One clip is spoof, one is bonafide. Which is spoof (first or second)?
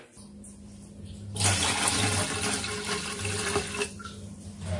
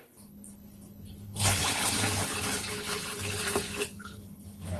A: second